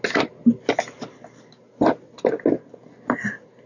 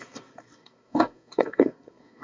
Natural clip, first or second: first